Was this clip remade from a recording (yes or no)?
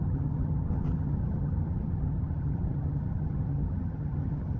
yes